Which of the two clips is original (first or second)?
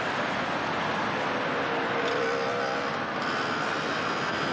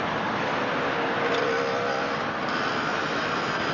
first